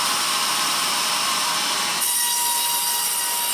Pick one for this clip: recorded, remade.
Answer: recorded